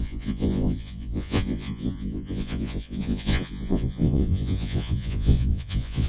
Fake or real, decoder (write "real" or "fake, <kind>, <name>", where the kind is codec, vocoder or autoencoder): fake, vocoder, Vocos